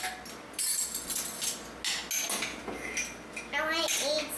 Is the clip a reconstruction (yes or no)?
no